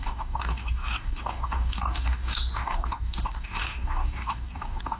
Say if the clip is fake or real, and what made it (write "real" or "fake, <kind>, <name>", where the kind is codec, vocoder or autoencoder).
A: fake, codec, DAC